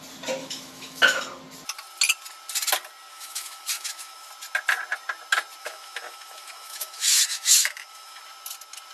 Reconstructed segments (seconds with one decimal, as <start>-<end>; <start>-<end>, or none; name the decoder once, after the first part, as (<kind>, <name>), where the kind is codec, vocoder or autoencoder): 0.4-1.2 (autoencoder, DAC-VAE); 3.1-4.3; 5.6-8.2